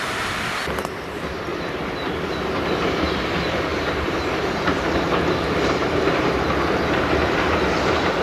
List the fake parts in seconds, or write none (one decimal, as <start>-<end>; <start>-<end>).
1.5-2.3; 3.7-7.6